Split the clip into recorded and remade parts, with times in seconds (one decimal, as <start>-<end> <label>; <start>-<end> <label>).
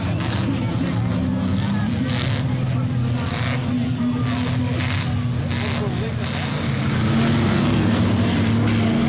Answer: 0.0-7.5 recorded; 7.5-8.0 remade; 8.0-9.1 recorded